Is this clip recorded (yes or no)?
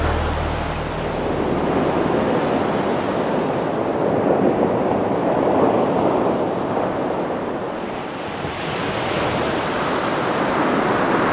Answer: yes